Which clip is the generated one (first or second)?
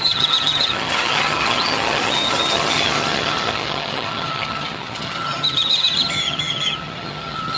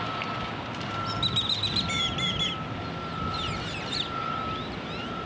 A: first